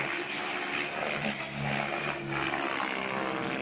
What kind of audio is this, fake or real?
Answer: real